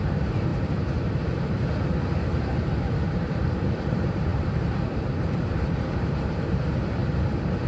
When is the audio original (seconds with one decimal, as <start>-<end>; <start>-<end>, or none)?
7.0-7.7